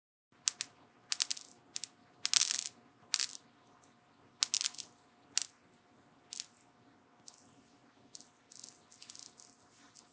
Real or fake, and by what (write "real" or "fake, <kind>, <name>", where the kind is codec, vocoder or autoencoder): real